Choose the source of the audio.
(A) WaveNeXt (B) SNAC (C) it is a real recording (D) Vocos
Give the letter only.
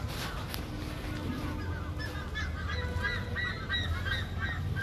C